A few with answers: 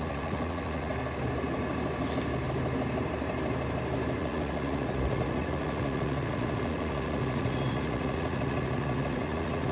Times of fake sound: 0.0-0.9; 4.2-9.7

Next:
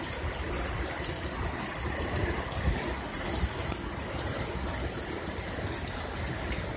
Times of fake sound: none

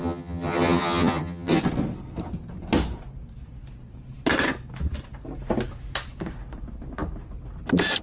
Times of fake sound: 0.0-1.6

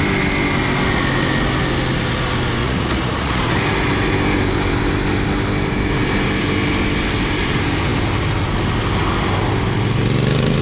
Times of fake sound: 2.6-3.4

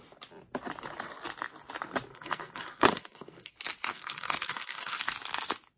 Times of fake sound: 2.1-3.5; 3.9-5.0

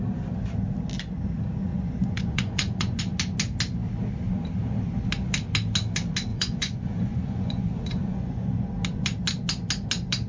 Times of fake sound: 1.7-3.0; 6.3-8.7

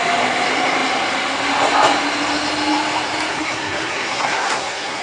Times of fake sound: 3.3-5.0

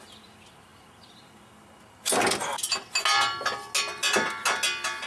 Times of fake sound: none